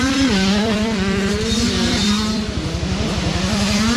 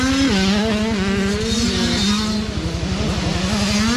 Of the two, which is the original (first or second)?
second